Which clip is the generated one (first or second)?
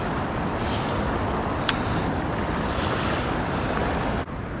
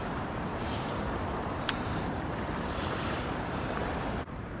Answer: second